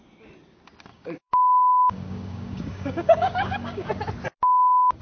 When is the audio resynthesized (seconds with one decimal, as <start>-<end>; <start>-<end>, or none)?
0.9-3.9